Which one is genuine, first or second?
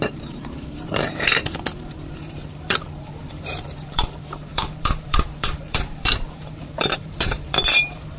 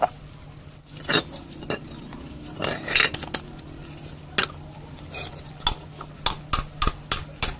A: second